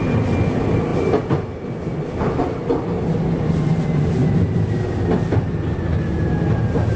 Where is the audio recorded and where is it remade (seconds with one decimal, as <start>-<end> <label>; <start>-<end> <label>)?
0.0-7.0 recorded